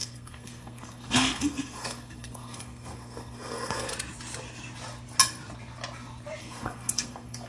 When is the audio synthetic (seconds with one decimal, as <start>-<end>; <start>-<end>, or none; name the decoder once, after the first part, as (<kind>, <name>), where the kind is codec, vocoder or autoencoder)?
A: 0.0-3.9 (codec, SNAC); 6.4-7.5